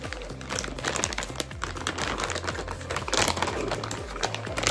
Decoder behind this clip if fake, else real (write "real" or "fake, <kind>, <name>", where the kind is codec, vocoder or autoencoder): real